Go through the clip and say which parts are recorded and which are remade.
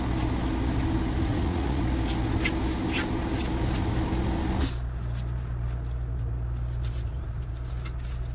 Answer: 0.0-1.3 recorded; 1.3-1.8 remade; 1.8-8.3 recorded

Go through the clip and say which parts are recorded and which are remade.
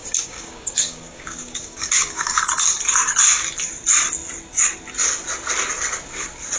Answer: 0.0-2.4 remade; 2.4-6.6 recorded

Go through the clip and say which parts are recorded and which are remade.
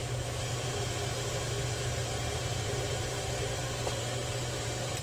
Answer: 0.0-2.1 recorded; 2.1-5.0 remade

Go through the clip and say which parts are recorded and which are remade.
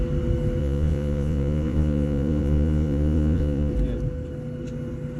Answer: 0.0-0.6 recorded; 0.6-3.7 remade; 3.7-5.2 recorded